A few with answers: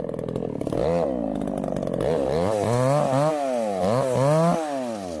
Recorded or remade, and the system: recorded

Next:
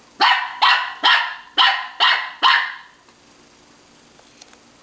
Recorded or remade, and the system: recorded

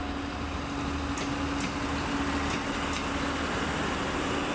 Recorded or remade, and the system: recorded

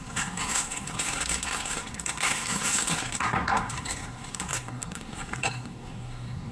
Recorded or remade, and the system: remade, codec, SNAC